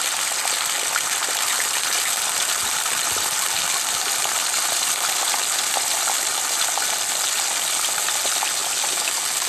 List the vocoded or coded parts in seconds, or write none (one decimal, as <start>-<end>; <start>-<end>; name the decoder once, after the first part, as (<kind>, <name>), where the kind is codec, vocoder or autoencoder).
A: none